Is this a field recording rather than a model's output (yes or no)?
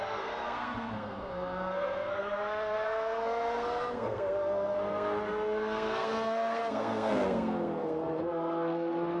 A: no